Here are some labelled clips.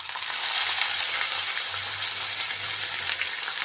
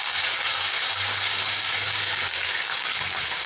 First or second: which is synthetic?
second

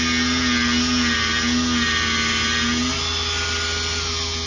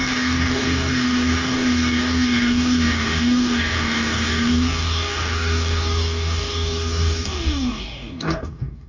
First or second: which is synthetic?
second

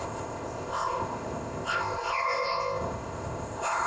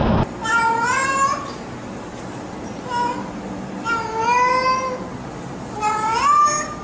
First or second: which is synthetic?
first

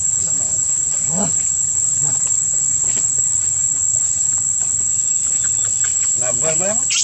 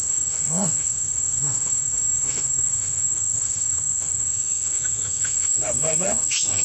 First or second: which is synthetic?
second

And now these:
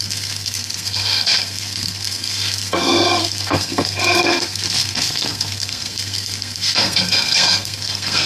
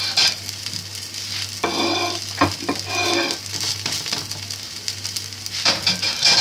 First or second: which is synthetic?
first